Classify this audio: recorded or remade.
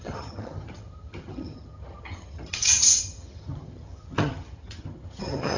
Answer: remade